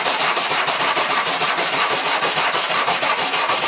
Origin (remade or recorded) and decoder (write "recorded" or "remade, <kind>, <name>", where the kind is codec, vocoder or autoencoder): remade, vocoder, BigVGAN v2